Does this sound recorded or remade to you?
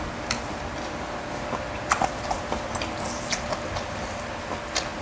recorded